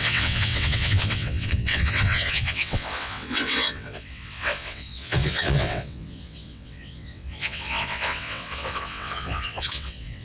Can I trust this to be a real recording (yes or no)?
no